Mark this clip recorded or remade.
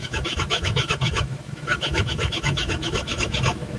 remade